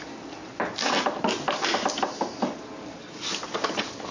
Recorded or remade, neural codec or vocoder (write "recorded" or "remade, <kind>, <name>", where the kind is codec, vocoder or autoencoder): recorded